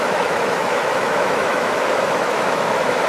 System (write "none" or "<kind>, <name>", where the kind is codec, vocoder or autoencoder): autoencoder, DAC-VAE